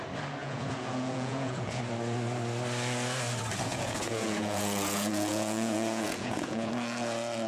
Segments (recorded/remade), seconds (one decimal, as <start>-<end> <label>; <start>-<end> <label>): 0.0-0.4 recorded; 0.4-1.8 remade; 1.8-3.7 recorded; 3.7-6.7 remade; 6.7-7.5 recorded